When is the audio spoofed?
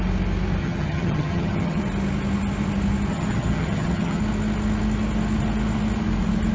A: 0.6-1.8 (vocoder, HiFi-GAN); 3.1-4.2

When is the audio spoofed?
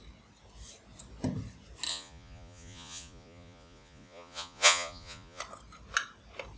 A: 1.9-5.4 (vocoder, Vocos)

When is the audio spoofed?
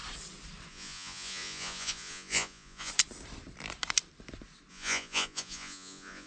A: 0.7-2.9 (vocoder, Vocos); 4.7-6.3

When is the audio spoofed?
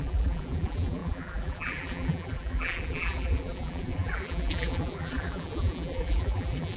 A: 0.0-6.8 (vocoder, BigVGAN v2)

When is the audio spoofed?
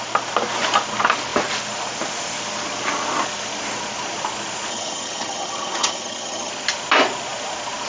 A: 4.7-6.5 (vocoder, HiFi-GAN)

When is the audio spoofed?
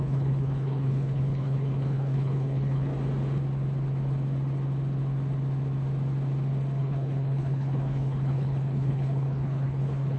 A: 0.0-2.9 (codec, HILCodec); 6.8-10.2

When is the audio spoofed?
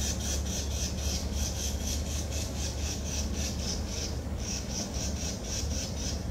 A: 1.2-5.0 (codec, DAC)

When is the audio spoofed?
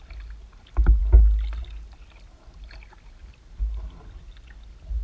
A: none